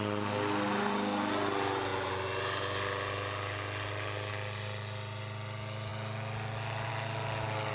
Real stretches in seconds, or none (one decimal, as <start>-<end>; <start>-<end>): 0.0-7.7